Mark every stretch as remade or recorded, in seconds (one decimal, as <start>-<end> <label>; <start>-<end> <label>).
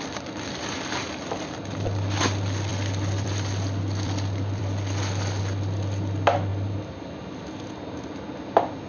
0.0-2.7 recorded; 2.7-5.4 remade; 5.4-6.5 recorded; 6.5-7.1 remade; 7.1-8.9 recorded